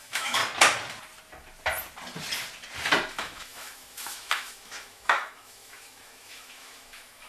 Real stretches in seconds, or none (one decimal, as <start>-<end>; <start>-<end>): 0.4-3.1